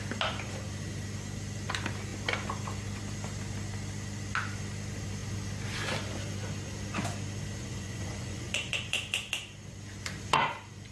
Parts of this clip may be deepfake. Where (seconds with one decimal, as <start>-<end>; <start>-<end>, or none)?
7.6-9.3